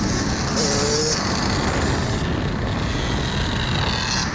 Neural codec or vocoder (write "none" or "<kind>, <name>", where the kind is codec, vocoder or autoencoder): none